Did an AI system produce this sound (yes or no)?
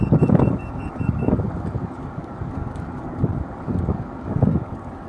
yes